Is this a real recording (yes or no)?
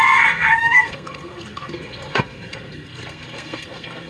no